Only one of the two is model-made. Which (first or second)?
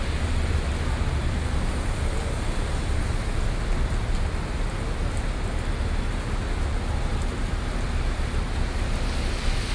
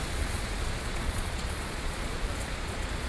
second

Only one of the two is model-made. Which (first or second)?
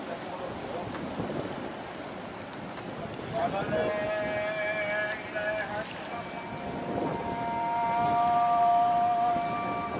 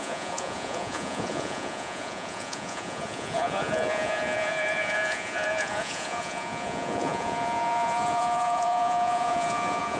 second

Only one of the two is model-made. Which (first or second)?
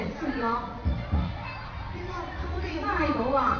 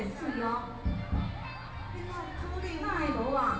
first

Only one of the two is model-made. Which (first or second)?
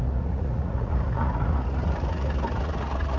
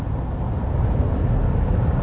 first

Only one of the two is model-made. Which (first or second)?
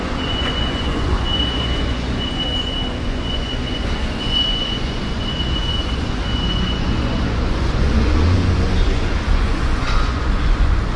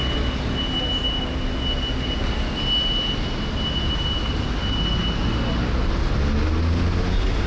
first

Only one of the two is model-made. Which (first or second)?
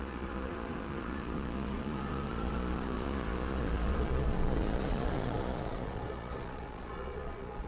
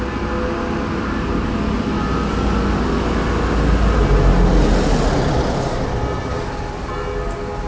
first